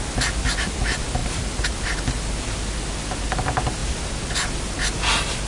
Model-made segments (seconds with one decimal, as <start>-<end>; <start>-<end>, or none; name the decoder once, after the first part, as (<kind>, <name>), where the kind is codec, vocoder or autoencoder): none